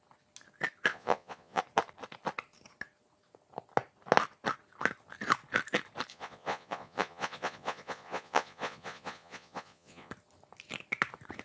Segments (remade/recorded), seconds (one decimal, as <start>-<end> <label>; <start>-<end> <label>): 0.0-0.9 recorded; 0.9-1.6 remade; 1.6-6.1 recorded; 6.1-10.1 remade; 10.1-11.4 recorded